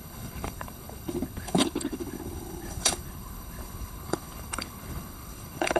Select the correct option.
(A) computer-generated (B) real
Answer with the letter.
A